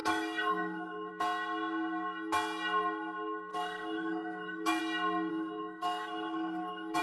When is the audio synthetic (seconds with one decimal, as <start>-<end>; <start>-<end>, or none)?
0.0-1.1; 3.5-4.8; 5.3-7.0